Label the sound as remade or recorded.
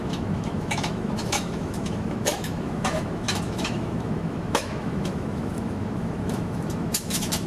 remade